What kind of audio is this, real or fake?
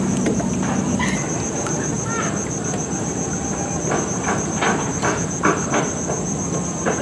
real